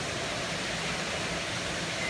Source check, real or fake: fake